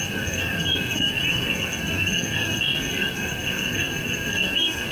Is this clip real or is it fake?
fake